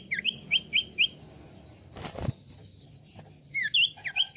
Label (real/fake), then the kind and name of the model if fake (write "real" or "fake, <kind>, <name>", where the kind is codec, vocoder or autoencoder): real